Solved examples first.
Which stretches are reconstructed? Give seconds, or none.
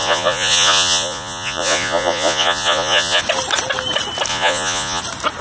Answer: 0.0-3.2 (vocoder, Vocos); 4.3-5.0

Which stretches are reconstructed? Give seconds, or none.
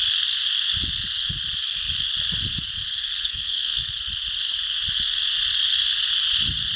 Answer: 3.2-3.8 (codec, SNAC)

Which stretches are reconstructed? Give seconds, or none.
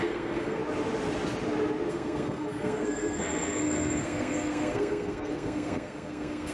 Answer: 0.0-0.6 (codec, SNAC); 1.9-6.5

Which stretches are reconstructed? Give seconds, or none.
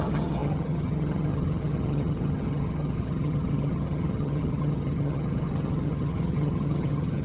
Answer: 0.0-7.2 (vocoder, HiFi-GAN)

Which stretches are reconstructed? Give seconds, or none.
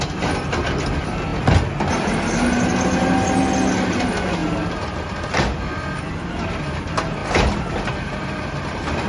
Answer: none